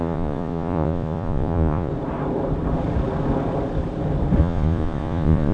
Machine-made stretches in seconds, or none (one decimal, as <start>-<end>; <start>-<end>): 0.0-1.9; 4.4-5.5